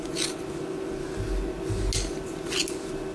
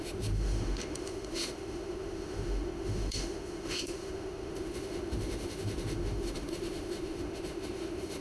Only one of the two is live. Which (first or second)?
first